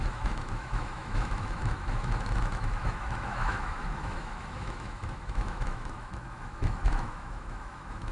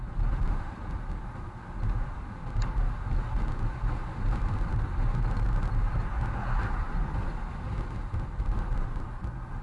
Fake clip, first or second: first